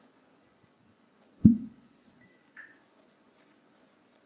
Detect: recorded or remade remade